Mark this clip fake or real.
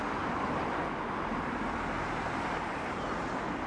real